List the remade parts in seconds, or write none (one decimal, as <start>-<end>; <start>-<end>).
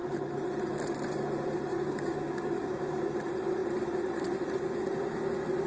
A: 1.7-3.0